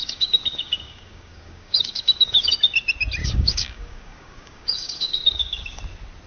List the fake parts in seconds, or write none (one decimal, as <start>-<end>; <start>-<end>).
0.0-2.5; 3.2-5.8